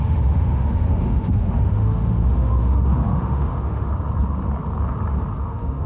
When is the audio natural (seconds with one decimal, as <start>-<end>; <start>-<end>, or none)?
3.9-5.4